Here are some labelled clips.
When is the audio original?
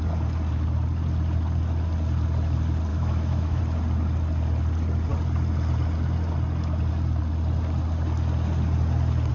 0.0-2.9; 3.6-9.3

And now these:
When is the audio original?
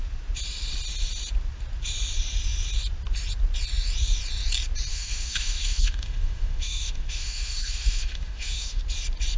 0.0-4.9; 8.8-9.4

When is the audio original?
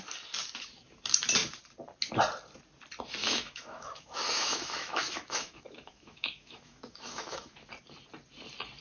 0.0-3.2; 7.7-8.8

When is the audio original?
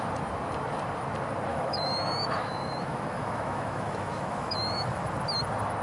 0.0-1.5; 5.0-5.8